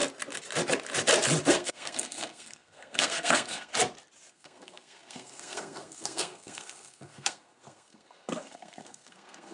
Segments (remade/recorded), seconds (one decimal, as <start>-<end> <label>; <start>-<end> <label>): 0.0-1.5 recorded; 1.5-3.7 remade; 3.7-4.3 recorded; 4.3-9.5 remade